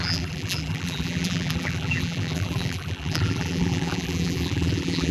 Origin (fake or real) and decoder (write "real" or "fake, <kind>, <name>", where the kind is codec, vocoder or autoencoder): fake, vocoder, BigVGAN v2